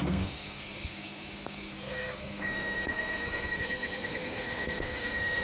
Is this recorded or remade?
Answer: remade